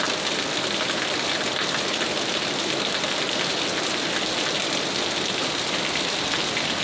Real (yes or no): yes